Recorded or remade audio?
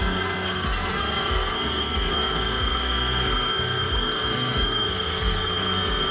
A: remade